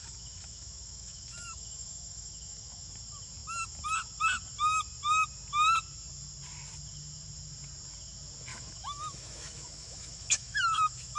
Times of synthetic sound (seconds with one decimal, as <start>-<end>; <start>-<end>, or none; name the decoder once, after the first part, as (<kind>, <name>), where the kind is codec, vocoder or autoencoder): 0.0-2.9 (autoencoder, DAC-VAE); 8.5-11.2